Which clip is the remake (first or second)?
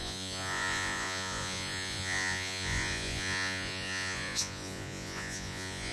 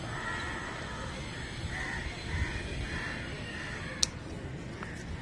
first